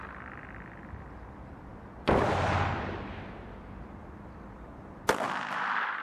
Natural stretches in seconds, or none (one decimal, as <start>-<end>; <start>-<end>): 0.0-4.0; 5.0-6.0